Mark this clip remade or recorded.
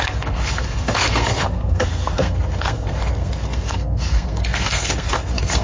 remade